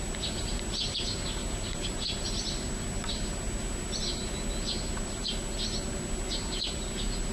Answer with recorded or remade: recorded